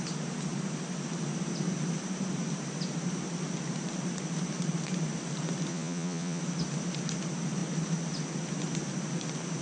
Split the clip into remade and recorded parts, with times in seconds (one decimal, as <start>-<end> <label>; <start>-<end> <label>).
0.0-5.7 recorded; 5.7-6.4 remade; 6.4-9.6 recorded